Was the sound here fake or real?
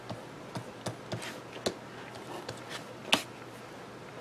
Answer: real